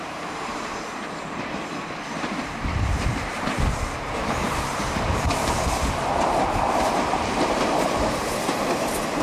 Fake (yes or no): yes